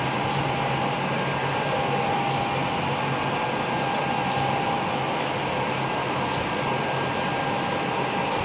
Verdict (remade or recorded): recorded